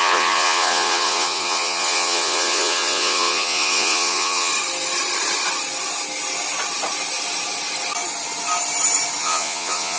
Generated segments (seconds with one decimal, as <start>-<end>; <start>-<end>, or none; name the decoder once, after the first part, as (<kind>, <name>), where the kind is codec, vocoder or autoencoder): 0.0-4.5 (vocoder, Vocos); 9.2-10.0